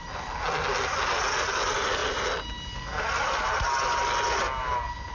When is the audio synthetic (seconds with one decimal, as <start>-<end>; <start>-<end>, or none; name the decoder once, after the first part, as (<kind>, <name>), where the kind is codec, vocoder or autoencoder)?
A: none